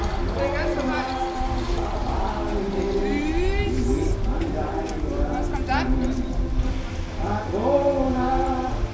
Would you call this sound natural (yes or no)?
yes